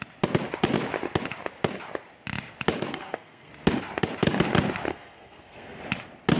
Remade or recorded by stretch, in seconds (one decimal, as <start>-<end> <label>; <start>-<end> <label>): 0.0-2.9 recorded; 2.9-3.5 remade; 3.5-4.9 recorded; 4.9-5.8 remade; 5.8-6.4 recorded